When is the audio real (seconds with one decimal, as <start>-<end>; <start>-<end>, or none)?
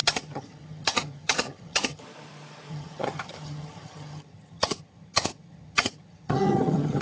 2.0-2.7